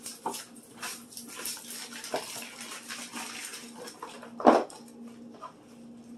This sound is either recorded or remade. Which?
recorded